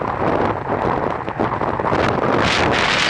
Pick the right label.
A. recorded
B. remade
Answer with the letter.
A